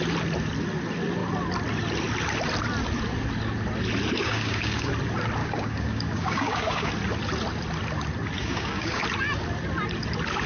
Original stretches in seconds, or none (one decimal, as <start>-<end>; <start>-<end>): 0.0-4.2; 4.9-5.4; 6.9-8.4; 9.0-10.5